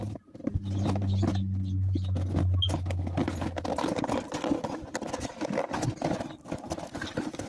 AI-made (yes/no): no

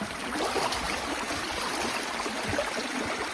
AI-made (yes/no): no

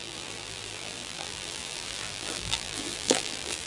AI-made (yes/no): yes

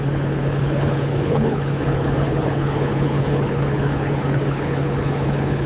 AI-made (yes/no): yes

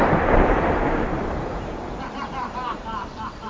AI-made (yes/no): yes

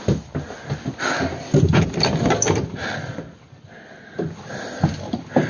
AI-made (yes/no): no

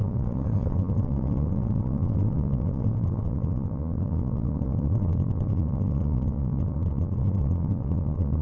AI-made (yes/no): yes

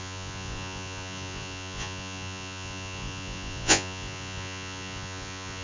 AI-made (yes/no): yes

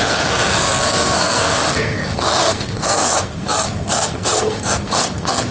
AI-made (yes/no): yes